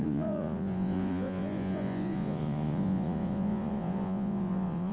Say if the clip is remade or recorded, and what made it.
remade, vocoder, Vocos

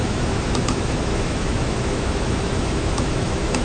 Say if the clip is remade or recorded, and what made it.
remade, autoencoder, DAC-VAE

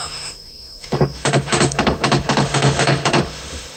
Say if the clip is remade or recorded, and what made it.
remade, autoencoder, DAC-VAE